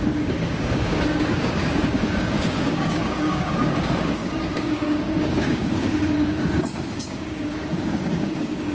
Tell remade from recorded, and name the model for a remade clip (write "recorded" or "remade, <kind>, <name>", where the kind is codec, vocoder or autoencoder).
remade, codec, DAC